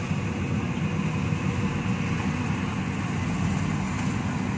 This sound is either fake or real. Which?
real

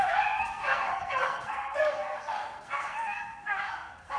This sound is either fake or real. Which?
fake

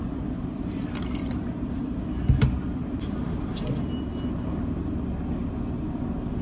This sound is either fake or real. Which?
real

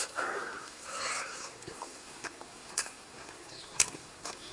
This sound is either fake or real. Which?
fake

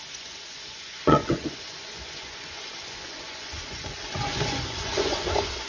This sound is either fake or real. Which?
fake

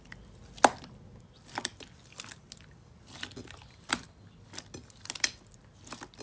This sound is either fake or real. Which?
real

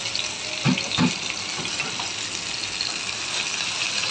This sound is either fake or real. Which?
real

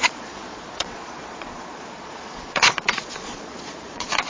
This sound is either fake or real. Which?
fake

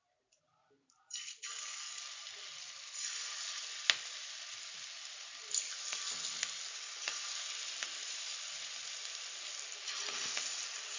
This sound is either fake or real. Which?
real